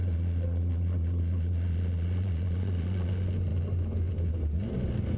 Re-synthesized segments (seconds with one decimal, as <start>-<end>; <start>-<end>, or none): 0.0-3.1